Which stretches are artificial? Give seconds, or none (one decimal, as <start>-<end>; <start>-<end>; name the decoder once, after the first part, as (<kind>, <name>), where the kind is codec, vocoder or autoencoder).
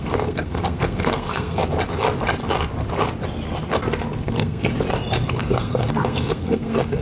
0.0-1.6 (codec, SNAC); 4.2-4.7; 5.3-7.0